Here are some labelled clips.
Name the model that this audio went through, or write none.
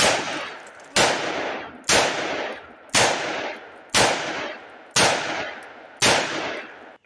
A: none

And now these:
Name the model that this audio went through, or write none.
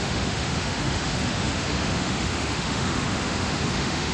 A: autoencoder, DAC-VAE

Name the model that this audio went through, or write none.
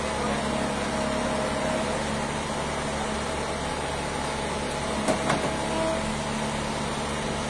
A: none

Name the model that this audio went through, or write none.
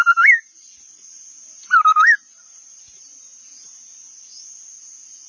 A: vocoder, BigVGAN v2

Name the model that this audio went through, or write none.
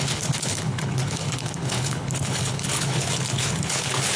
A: codec, HILCodec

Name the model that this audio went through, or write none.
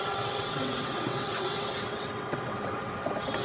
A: vocoder, WaveNeXt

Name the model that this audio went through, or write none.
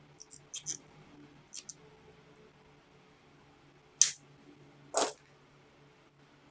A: none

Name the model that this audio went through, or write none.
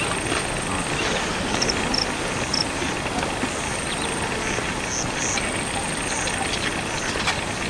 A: none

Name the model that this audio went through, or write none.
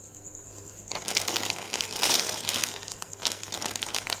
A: codec, SNAC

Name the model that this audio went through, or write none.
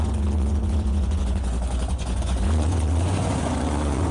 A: vocoder, Vocos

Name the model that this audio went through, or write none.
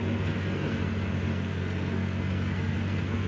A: codec, SNAC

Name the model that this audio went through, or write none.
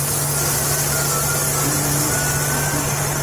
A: none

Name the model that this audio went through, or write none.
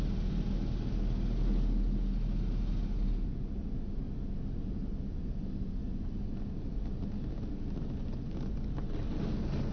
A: none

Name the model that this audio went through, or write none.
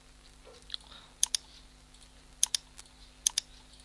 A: none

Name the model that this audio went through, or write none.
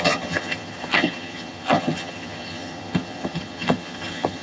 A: vocoder, HiFi-GAN